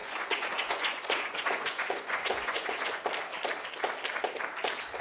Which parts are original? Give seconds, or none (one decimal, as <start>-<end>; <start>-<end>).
3.0-5.0